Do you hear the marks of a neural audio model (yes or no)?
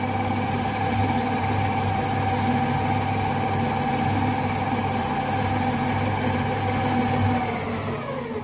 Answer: no